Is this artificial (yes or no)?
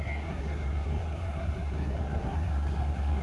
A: yes